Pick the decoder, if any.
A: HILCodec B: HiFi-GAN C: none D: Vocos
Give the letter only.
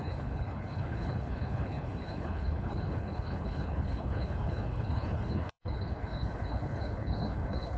A